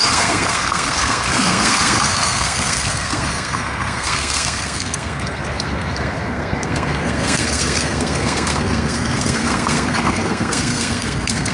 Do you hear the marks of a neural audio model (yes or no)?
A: yes